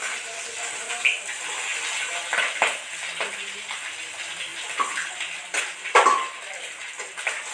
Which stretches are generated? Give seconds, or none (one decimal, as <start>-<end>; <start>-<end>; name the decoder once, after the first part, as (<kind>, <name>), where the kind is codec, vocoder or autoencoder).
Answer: 4.5-6.8 (vocoder, BigVGAN v2)